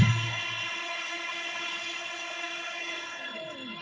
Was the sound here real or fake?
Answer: fake